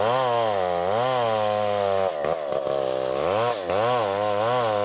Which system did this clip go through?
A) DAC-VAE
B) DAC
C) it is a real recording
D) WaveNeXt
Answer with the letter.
C